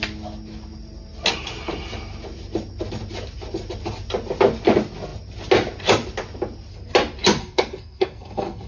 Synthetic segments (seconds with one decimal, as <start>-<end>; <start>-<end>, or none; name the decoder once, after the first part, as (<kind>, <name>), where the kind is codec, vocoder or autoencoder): 7.4-8.7 (codec, SNAC)